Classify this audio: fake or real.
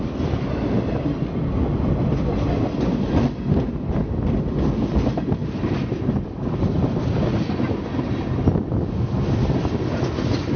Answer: real